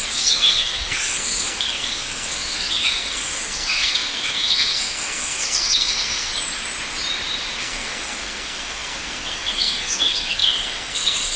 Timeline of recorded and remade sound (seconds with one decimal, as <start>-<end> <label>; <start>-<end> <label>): 0.0-6.3 remade; 6.3-7.6 recorded; 7.6-11.4 remade